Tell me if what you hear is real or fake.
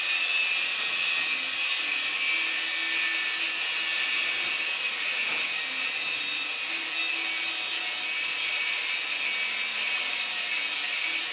real